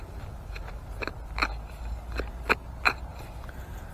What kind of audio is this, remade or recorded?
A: recorded